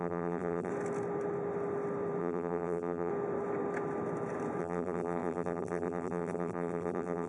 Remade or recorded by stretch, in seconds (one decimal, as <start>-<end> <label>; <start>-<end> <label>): 0.0-0.7 remade; 0.7-2.2 recorded; 2.2-3.1 remade; 3.1-4.6 recorded; 4.6-7.3 remade